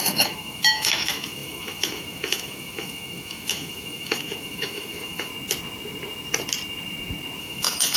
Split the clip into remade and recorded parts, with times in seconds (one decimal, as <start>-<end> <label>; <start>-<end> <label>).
0.0-5.3 remade; 5.3-7.4 recorded; 7.4-8.0 remade